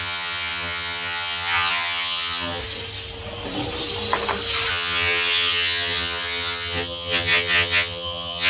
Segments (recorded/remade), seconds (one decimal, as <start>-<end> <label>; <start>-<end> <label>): 0.0-2.6 remade; 2.6-4.7 recorded; 4.7-8.5 remade